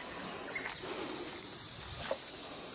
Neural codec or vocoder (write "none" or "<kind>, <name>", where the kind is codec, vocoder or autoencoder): none